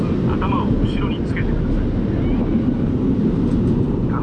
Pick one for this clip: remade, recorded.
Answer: recorded